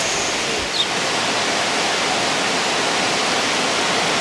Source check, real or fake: real